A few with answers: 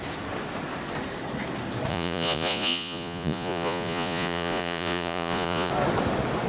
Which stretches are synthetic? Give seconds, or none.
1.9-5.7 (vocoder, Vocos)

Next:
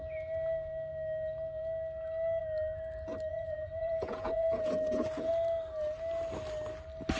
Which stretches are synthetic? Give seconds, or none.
3.3-5.3 (vocoder, Vocos)